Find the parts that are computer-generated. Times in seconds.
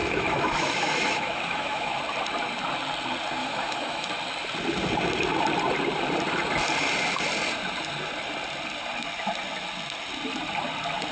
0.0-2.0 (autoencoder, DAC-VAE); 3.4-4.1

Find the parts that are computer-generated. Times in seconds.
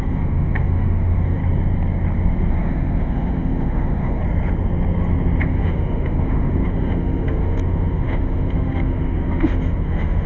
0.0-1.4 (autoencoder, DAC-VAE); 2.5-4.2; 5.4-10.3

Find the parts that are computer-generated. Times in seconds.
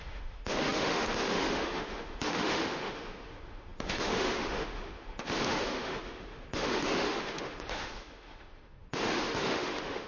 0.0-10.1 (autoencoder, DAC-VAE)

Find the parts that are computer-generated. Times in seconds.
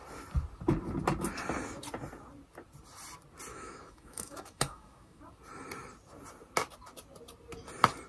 3.5-5.2 (autoencoder, DAC-VAE)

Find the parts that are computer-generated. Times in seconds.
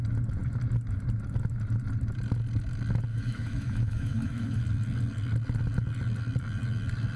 3.1-4.6 (autoencoder, DAC-VAE)